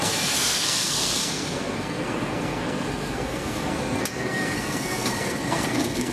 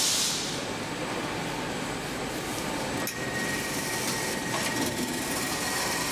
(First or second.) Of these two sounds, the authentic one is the second